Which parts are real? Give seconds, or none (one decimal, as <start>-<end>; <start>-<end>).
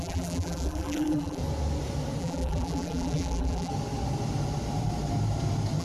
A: 1.4-2.2; 3.7-5.8